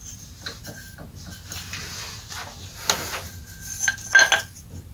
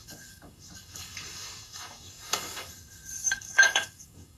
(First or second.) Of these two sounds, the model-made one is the second